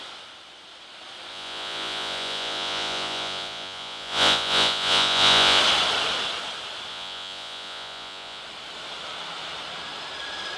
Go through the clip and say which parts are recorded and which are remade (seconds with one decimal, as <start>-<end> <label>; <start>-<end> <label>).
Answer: 0.0-1.3 recorded; 1.3-5.6 remade; 5.6-6.9 recorded; 6.9-8.4 remade; 8.4-10.6 recorded